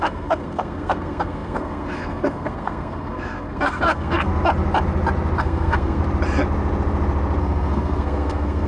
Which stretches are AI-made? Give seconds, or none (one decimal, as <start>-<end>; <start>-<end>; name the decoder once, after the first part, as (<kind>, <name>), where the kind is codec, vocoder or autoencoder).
0.0-4.3 (codec, SNAC); 5.4-6.0; 7.4-8.7